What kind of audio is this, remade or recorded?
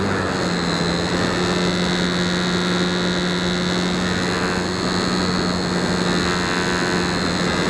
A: recorded